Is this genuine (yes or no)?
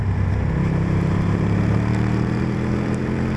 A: no